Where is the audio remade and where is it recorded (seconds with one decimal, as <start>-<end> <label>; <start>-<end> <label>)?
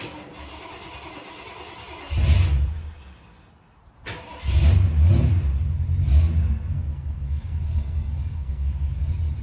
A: 0.0-6.4 recorded; 6.4-9.0 remade; 9.0-9.4 recorded